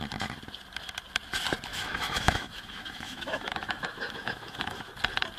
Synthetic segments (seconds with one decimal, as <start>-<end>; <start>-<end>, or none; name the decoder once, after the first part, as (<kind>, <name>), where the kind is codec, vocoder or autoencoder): 1.7-4.9 (autoencoder, DAC-VAE)